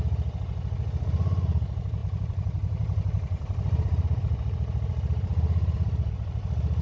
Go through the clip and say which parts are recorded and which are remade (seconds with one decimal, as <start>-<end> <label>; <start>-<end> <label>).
0.0-2.0 recorded; 2.0-6.1 remade; 6.1-6.8 recorded